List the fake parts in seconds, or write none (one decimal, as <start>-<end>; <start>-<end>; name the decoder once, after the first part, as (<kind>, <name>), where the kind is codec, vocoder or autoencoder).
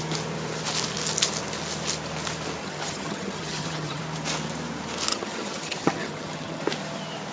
2.6-4.0 (vocoder, HiFi-GAN); 5.1-6.6